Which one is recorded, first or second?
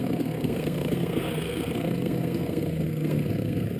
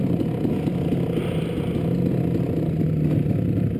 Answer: second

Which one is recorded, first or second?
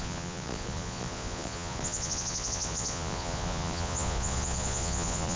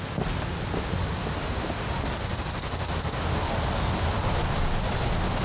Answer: second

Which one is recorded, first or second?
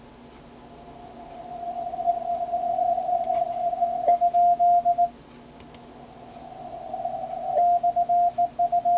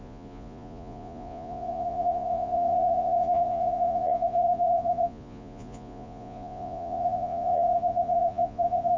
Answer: first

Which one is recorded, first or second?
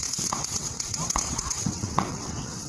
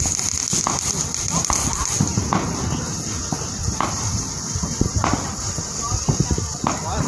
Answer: second